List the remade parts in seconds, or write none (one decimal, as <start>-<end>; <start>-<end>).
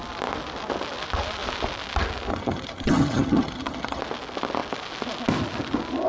2.3-4.0